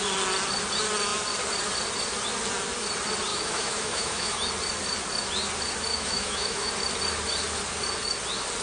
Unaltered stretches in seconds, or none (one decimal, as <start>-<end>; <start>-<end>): 0.0-3.3; 4.5-5.9; 6.7-8.6